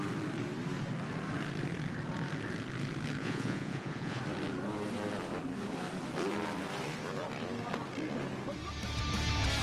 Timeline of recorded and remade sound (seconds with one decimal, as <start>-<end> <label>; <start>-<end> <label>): 0.0-3.2 recorded; 3.2-4.2 remade; 4.2-9.6 recorded